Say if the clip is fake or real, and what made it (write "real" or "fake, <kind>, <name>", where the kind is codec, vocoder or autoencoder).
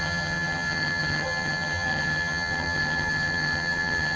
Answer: fake, vocoder, HiFi-GAN